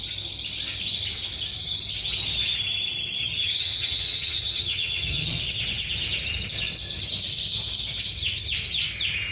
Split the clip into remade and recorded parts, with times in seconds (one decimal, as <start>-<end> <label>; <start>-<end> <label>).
0.0-3.2 recorded; 3.2-5.4 remade; 5.4-9.3 recorded